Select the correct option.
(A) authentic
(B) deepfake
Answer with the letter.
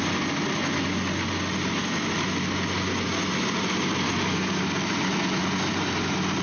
A